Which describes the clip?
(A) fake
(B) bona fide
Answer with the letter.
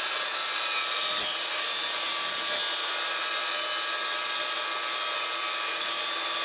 B